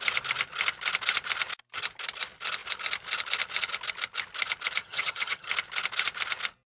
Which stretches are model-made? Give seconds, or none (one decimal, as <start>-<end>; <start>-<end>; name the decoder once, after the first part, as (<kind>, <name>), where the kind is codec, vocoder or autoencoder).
4.8-5.5 (vocoder, HiFi-GAN)